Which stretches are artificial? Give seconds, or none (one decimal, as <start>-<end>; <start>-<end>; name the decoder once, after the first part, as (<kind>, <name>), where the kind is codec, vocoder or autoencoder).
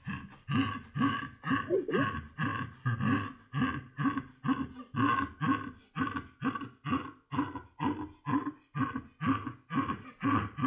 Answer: none